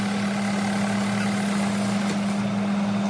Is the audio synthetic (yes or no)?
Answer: no